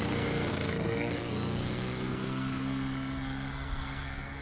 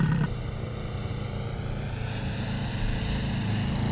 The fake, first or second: first